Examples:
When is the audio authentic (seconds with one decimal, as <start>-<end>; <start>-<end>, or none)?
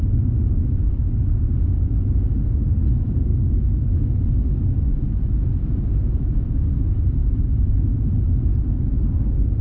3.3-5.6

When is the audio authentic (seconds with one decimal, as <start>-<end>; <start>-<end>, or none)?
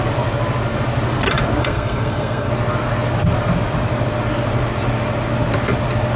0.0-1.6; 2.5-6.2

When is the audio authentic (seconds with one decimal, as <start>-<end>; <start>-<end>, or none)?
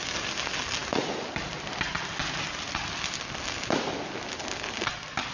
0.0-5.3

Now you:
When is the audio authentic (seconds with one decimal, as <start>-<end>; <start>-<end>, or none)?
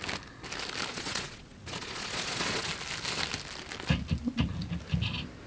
0.0-0.9; 2.7-5.5